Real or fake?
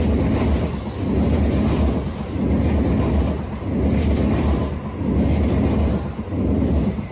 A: real